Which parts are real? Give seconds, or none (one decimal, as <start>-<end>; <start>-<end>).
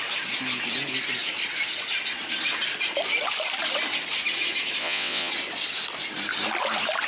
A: 0.0-4.8; 5.3-7.1